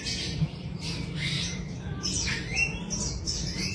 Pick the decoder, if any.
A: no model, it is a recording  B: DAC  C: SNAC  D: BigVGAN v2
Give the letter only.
D